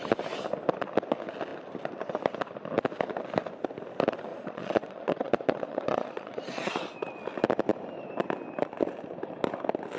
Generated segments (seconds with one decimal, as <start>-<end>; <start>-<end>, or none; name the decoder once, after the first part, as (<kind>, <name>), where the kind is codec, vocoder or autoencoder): 4.3-6.7 (vocoder, Vocos)